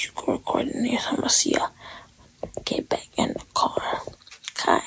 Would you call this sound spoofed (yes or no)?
yes